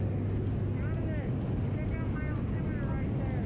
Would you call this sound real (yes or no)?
yes